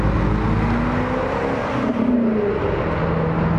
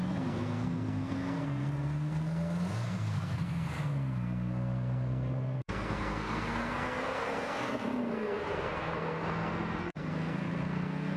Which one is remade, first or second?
second